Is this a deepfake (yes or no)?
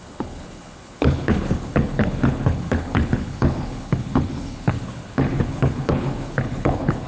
yes